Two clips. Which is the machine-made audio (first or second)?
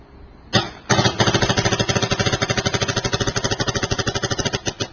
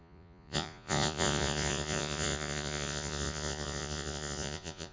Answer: second